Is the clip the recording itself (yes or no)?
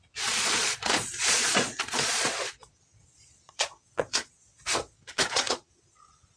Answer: no